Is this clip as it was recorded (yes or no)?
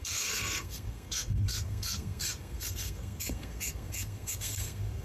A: no